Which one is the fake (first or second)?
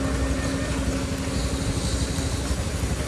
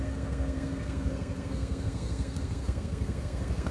second